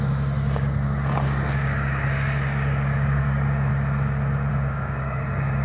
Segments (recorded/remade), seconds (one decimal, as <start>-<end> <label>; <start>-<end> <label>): 0.0-3.7 remade; 3.7-4.5 recorded; 4.5-5.6 remade